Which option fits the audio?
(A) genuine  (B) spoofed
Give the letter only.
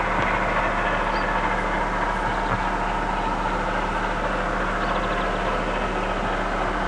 A